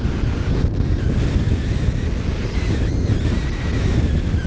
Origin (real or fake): real